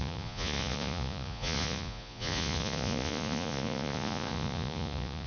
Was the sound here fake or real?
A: fake